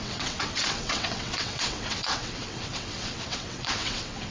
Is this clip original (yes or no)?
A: no